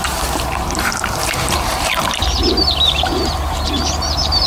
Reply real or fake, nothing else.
fake